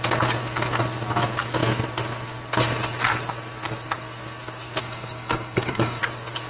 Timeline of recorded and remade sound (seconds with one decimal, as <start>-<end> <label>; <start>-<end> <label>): 0.0-4.8 recorded; 4.8-6.0 remade; 6.0-6.5 recorded